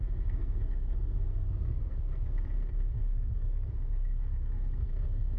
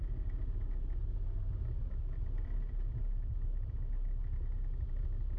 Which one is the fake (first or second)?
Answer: first